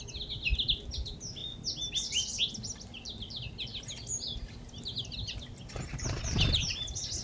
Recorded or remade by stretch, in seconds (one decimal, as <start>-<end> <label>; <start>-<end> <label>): 0.0-7.2 recorded